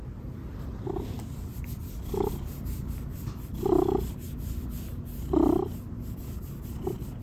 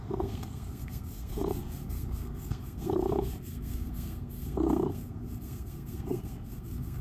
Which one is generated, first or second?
second